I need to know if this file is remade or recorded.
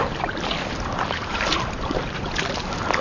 recorded